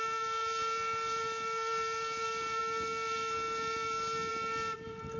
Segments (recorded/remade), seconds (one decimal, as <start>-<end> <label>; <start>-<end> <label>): 0.0-5.2 recorded